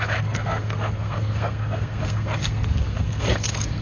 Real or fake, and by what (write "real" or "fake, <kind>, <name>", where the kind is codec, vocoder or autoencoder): fake, codec, SNAC